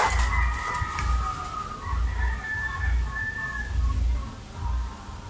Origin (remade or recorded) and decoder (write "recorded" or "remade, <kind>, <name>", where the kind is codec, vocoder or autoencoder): recorded